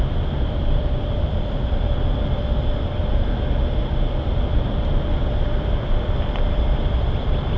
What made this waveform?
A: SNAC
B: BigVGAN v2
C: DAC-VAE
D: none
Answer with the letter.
B